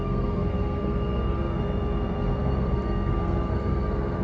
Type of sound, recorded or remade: remade